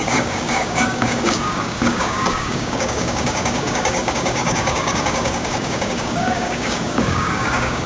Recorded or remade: remade